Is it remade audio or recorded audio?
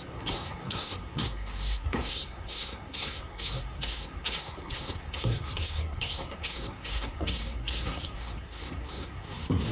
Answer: remade